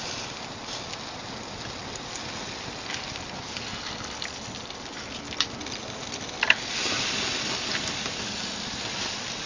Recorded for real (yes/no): yes